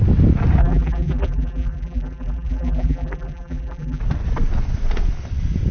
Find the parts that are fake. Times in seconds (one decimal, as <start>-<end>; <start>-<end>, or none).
0.6-4.0